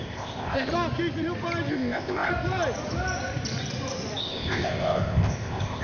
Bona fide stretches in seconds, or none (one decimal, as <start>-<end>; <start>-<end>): 0.7-1.7; 2.3-4.2

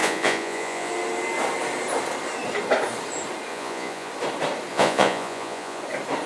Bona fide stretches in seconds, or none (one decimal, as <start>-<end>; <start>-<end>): 0.9-3.5; 4.1-4.7; 5.8-6.3

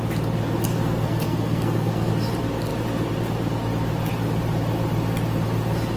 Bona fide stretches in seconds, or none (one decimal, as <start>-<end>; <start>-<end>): 0.0-0.7; 2.1-6.0

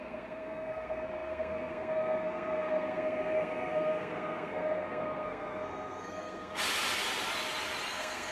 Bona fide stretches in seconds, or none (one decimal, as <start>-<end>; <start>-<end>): 6.6-7.9